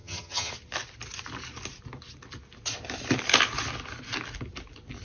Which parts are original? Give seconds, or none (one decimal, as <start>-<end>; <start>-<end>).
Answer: 0.5-5.0

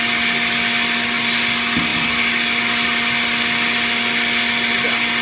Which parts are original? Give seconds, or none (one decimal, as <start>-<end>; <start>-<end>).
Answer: 0.0-5.2

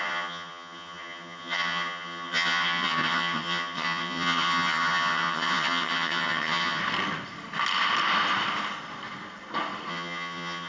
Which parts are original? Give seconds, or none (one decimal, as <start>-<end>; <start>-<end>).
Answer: 6.8-9.9

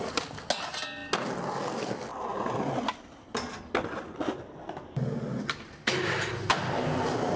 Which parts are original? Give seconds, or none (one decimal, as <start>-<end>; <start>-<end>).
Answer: 0.0-7.4

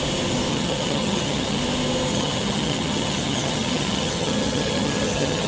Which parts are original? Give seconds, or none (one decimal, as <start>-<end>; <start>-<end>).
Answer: 0.0-0.5; 1.6-2.1

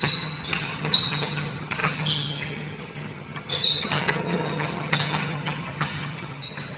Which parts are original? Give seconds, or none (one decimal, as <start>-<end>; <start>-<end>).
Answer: none

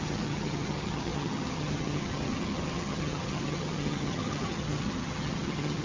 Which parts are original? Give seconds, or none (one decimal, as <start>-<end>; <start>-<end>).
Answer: none

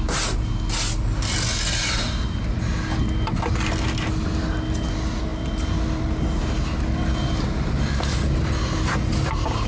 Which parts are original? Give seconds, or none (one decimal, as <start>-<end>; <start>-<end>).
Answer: 0.0-9.7